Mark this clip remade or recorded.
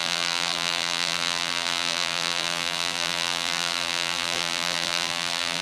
remade